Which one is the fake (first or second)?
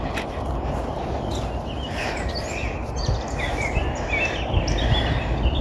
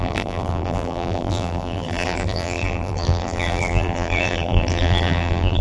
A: second